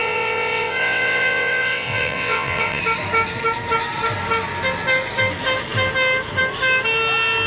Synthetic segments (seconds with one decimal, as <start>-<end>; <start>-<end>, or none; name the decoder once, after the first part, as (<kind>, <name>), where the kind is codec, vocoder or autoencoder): 0.0-2.8 (vocoder, WaveNeXt)